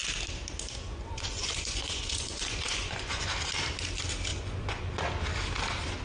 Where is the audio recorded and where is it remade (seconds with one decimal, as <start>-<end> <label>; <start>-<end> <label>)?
0.0-0.7 recorded; 0.7-3.3 remade; 3.3-4.3 recorded; 4.3-4.9 remade; 4.9-6.0 recorded